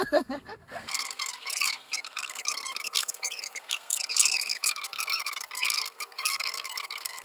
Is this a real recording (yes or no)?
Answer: no